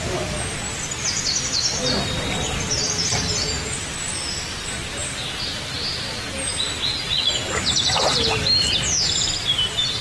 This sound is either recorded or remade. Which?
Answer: recorded